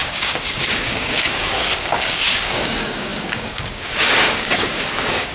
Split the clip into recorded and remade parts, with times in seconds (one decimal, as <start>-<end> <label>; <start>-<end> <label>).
0.0-5.3 remade